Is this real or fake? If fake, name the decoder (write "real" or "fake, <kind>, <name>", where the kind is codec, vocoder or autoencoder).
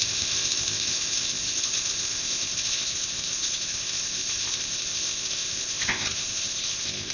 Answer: fake, codec, ZipCodec